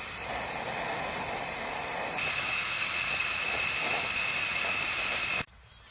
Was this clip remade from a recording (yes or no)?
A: no